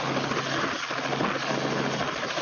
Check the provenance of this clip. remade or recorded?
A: recorded